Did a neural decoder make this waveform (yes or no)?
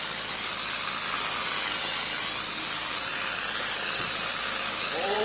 no